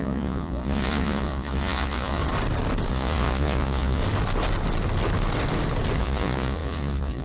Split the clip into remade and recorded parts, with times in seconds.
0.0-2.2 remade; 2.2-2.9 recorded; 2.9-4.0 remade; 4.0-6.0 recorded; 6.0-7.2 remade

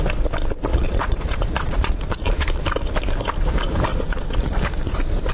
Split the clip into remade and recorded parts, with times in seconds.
0.0-0.7 recorded; 0.7-2.5 remade; 2.5-3.9 recorded; 3.9-4.7 remade; 4.7-5.3 recorded

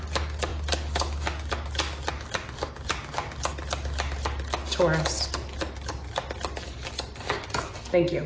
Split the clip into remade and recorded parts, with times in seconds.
0.0-8.3 recorded